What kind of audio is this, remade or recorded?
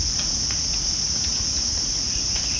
remade